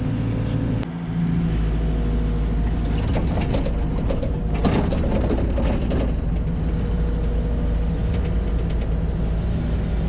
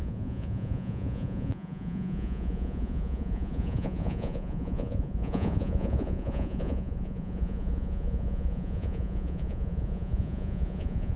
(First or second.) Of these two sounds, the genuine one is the first